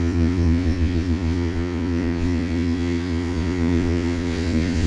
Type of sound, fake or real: fake